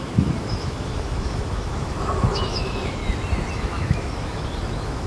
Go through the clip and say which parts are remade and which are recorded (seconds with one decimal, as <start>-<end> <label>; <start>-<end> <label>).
0.0-3.0 remade; 3.0-3.5 recorded; 3.5-5.1 remade